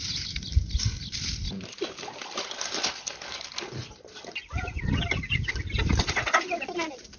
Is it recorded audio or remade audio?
recorded